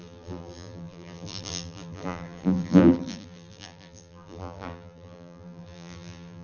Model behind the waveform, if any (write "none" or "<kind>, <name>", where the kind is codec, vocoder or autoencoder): vocoder, BigVGAN v2